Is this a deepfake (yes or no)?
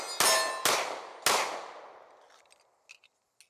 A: no